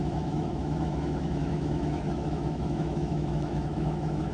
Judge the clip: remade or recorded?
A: remade